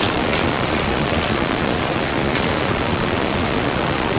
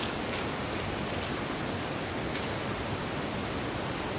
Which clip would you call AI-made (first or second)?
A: first